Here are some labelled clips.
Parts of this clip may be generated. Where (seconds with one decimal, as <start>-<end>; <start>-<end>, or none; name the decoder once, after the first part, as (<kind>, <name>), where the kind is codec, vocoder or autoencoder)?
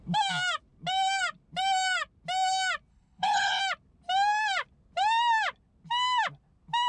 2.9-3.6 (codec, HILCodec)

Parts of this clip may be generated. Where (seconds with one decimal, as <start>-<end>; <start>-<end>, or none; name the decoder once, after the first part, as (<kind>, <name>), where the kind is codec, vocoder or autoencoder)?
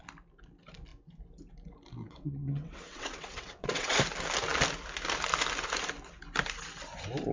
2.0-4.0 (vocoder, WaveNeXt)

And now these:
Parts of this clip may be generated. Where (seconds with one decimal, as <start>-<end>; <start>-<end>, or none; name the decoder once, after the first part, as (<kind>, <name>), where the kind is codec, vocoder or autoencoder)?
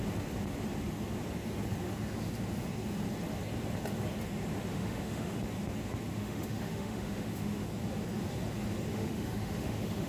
4.7-5.4 (autoencoder, DAC-VAE); 6.1-7.7; 8.9-10.1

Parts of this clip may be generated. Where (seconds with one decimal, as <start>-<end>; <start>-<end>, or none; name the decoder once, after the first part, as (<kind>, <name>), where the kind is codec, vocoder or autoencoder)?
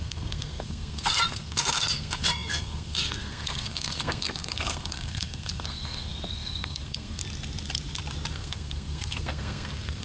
0.0-7.2 (codec, SNAC); 8.3-10.0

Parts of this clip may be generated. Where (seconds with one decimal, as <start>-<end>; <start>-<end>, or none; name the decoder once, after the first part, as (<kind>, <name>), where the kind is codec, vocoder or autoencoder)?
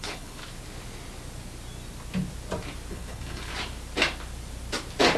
0.0-0.4 (codec, HILCodec); 2.9-3.5